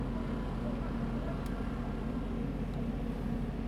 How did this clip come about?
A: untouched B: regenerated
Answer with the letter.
A